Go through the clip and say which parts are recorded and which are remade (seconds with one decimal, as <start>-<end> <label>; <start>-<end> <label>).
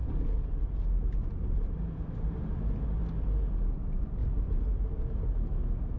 0.0-2.8 remade; 2.8-4.2 recorded; 4.2-5.2 remade; 5.2-6.0 recorded